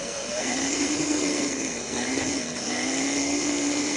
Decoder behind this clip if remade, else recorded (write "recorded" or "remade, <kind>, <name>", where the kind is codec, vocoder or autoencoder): remade, codec, SNAC